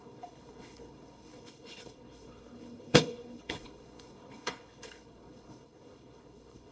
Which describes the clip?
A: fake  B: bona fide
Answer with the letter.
A